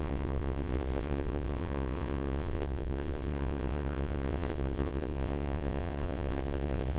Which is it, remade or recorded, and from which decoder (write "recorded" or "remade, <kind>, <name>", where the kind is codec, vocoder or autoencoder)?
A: remade, vocoder, WaveNeXt